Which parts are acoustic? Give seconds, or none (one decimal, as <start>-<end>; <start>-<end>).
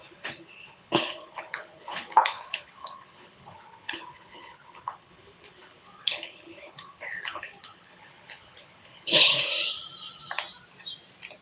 9.5-11.4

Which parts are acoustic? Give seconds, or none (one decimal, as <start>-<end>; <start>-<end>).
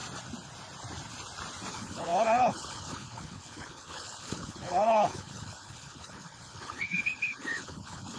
0.0-1.7